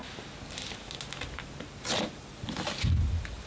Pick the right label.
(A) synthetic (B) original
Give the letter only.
B